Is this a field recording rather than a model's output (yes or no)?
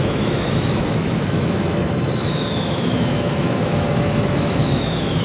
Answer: no